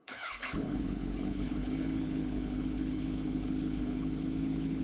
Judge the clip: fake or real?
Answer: fake